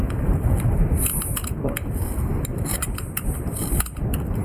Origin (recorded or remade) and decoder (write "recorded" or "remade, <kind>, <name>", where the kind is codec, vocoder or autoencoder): recorded